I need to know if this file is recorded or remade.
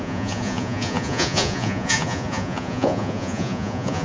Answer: remade